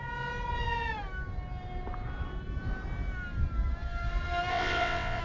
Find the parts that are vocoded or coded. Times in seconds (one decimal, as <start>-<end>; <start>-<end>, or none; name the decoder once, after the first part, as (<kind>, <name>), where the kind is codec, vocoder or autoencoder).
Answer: 4.5-5.2 (vocoder, WaveNeXt)